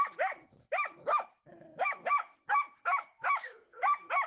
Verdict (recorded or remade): remade